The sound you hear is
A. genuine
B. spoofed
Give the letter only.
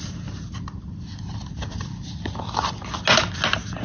A